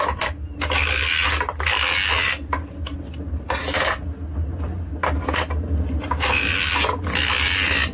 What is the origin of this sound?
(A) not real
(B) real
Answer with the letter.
B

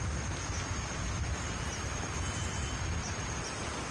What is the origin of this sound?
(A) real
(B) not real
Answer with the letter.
A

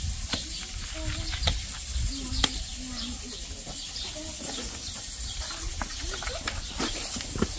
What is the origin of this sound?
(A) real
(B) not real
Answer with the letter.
A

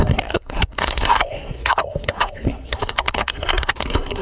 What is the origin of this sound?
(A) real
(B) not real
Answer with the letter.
B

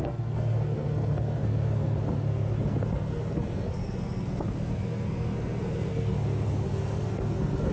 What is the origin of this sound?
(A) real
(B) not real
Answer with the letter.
B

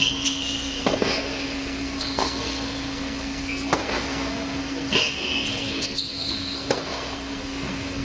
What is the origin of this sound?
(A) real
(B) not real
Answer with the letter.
B